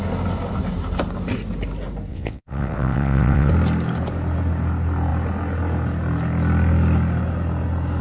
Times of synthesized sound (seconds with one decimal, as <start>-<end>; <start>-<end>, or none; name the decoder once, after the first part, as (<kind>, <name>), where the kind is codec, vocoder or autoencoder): 2.1-3.5 (vocoder, WaveNeXt)